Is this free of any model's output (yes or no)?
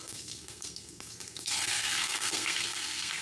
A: no